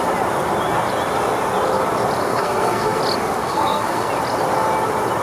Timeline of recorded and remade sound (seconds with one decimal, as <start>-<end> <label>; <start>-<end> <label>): 0.0-2.2 recorded; 2.2-3.0 remade; 3.0-3.4 recorded; 3.4-4.1 remade; 4.1-5.2 recorded